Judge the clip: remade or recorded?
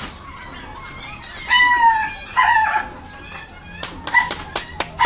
recorded